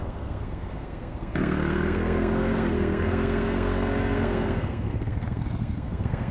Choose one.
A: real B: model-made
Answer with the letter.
B